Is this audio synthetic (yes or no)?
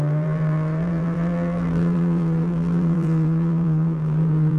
yes